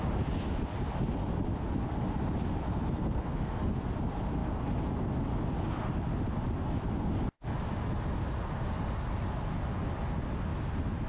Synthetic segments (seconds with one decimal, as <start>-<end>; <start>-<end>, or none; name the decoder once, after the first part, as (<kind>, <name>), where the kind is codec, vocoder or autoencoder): 3.0-3.7 (codec, SNAC)